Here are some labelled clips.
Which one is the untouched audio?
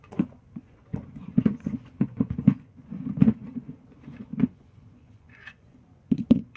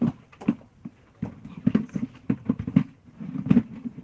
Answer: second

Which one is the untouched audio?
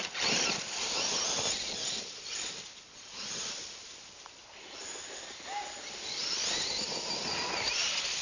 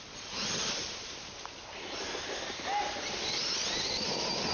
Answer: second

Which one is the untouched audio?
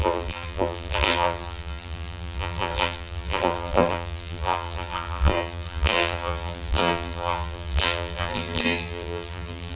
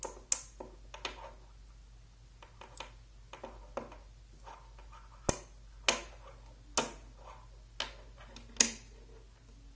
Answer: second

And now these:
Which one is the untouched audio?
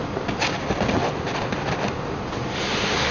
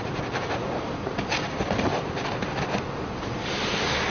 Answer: first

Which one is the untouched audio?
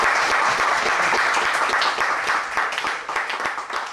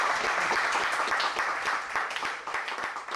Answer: first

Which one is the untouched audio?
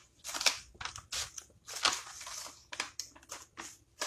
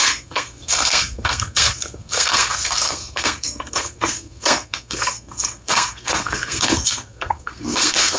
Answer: first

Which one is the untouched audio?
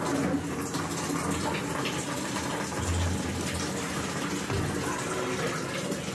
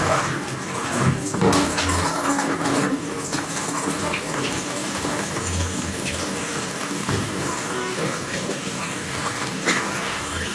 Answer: first